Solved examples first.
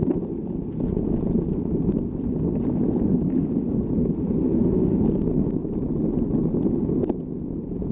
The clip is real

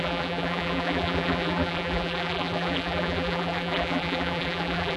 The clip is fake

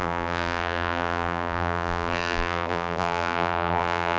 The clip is fake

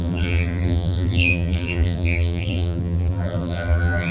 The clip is fake